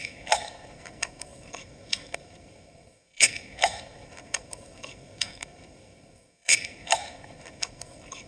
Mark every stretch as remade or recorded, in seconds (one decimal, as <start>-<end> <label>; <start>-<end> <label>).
0.0-8.3 remade